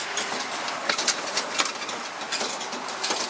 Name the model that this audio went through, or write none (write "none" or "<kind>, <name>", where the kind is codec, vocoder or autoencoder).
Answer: none